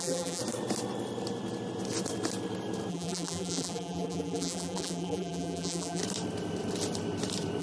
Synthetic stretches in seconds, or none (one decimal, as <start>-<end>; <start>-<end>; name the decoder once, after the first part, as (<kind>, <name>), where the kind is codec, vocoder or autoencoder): 0.0-0.4 (vocoder, BigVGAN v2); 2.9-6.0